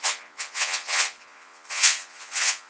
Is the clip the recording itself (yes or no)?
no